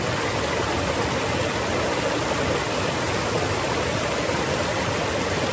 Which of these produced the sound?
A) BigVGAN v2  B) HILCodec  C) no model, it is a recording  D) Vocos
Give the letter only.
C